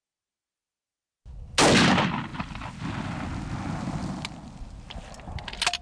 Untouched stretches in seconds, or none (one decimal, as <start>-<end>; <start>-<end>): 0.0-5.8